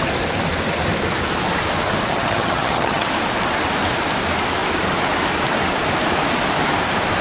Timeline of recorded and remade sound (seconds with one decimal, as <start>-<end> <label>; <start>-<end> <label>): 0.0-2.1 recorded; 2.1-3.1 remade; 3.1-7.2 recorded